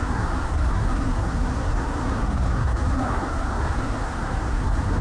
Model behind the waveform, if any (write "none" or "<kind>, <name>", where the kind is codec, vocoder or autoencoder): codec, SNAC